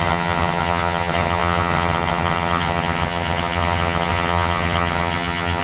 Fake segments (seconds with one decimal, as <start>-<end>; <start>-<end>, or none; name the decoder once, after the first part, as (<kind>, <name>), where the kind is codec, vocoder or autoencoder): 0.0-5.6 (vocoder, HiFi-GAN)